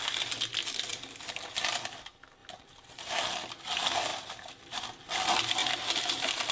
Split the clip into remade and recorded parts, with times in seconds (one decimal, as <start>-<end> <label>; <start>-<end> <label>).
0.0-2.4 recorded; 2.4-3.1 remade; 3.1-4.1 recorded; 4.1-5.0 remade; 5.0-5.6 recorded; 5.6-6.5 remade

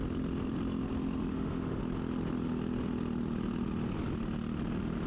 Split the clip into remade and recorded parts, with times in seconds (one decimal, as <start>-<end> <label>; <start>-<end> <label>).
0.0-1.3 recorded; 1.3-1.8 remade; 1.8-5.1 recorded

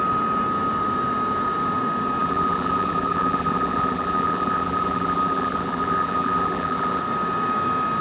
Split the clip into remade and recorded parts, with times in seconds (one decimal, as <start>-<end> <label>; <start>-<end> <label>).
0.0-2.2 recorded; 2.2-7.0 remade; 7.0-8.0 recorded

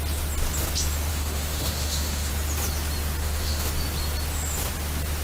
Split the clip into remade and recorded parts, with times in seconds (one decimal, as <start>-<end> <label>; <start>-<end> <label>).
0.0-1.1 recorded; 1.1-2.3 remade; 2.3-3.2 recorded; 3.2-3.7 remade; 3.7-5.2 recorded

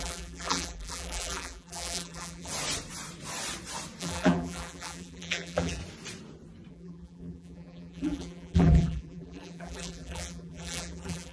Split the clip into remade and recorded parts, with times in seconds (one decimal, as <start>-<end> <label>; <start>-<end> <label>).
0.0-2.5 remade; 2.5-4.0 recorded; 4.0-5.8 remade; 5.8-6.7 recorded; 6.7-11.3 remade